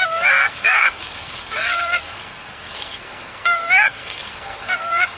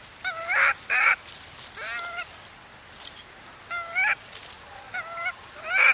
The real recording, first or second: second